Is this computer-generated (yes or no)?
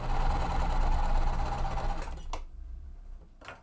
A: no